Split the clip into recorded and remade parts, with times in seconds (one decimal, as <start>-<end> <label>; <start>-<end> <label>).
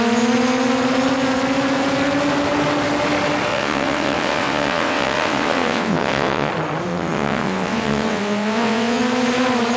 0.0-3.5 recorded; 3.5-6.5 remade; 6.5-6.9 recorded; 6.9-9.0 remade; 9.0-9.8 recorded